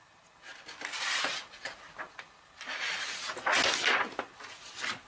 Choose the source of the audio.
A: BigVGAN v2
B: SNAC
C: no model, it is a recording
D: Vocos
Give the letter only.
C